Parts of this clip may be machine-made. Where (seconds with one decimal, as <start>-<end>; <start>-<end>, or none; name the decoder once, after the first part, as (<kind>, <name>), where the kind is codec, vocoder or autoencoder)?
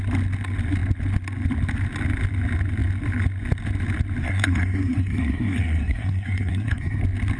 4.2-7.0 (codec, SNAC)